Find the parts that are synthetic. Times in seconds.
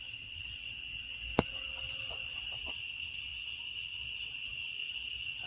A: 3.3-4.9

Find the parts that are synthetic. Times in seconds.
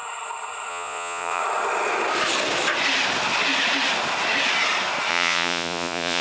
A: 0.7-1.4; 5.1-6.2